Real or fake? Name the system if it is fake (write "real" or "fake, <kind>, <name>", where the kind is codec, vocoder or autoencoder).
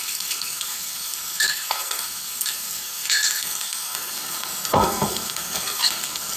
fake, codec, SNAC